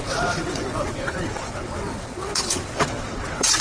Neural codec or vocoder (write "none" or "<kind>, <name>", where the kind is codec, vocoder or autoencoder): vocoder, WaveNeXt